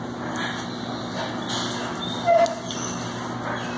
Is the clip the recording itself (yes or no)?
yes